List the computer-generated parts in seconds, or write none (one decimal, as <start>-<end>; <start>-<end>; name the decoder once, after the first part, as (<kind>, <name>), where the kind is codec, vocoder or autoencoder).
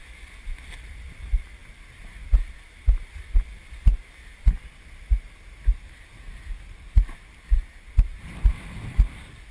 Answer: none